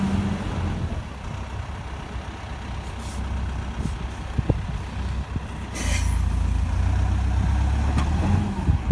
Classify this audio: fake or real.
real